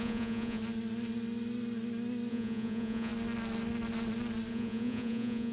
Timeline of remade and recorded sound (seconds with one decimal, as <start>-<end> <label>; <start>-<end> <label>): 0.0-0.6 remade; 0.6-2.3 recorded; 2.3-3.1 remade; 3.1-4.5 recorded; 4.5-5.5 remade